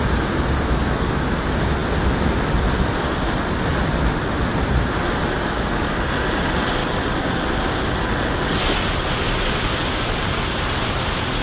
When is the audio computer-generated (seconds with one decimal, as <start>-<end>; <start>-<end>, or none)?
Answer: none